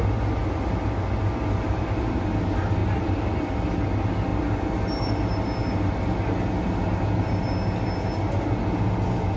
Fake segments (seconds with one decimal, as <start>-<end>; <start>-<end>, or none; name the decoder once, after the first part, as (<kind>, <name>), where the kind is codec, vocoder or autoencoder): 2.8-3.4 (vocoder, BigVGAN v2)